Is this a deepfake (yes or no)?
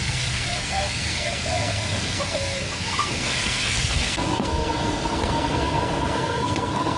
yes